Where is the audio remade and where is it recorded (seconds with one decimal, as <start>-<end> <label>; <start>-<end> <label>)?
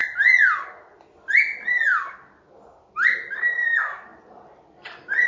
0.0-5.3 recorded